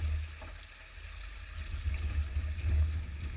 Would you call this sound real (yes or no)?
yes